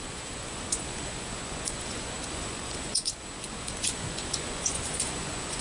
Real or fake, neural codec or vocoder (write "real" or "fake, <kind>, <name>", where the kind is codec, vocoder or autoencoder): fake, vocoder, Vocos